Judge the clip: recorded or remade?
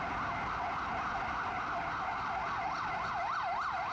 recorded